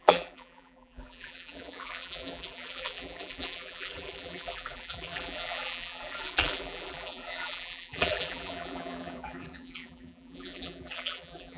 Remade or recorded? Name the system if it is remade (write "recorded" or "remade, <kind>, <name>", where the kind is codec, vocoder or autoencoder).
remade, vocoder, BigVGAN v2